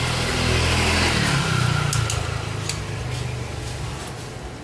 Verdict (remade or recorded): recorded